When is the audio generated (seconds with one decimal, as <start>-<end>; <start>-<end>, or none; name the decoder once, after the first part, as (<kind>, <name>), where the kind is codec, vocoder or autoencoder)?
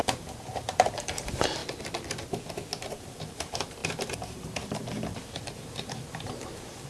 0.0-1.6 (vocoder, BigVGAN v2); 3.0-6.9